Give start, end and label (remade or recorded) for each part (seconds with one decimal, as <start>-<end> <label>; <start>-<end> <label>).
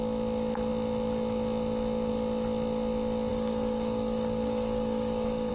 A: 0.0-3.3 recorded; 3.3-5.5 remade